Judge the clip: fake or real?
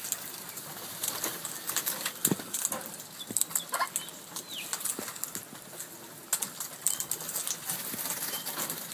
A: real